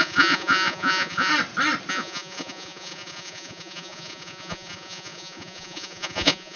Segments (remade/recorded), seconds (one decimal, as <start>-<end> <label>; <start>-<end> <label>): 0.0-1.3 remade; 1.3-1.9 recorded; 1.9-6.6 remade